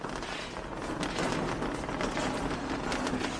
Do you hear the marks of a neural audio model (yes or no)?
no